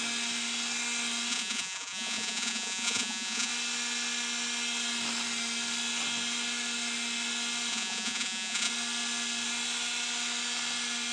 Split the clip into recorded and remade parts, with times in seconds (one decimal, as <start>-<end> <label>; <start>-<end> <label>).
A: 0.0-1.3 recorded; 1.3-3.5 remade; 3.5-7.7 recorded; 7.7-8.7 remade; 8.7-11.1 recorded